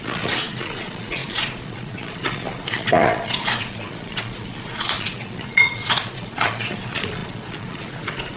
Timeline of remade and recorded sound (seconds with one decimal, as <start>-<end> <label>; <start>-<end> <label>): 0.0-8.4 remade